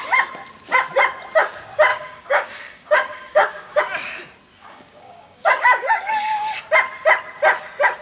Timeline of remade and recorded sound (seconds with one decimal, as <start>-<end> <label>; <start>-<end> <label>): 0.0-1.9 recorded; 1.9-3.8 remade; 3.8-4.6 recorded; 4.6-6.6 remade; 6.6-8.0 recorded